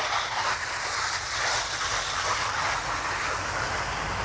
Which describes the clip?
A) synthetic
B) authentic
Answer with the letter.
B